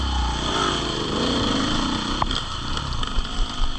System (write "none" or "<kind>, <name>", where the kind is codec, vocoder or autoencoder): none